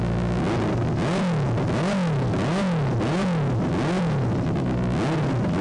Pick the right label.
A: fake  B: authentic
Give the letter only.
B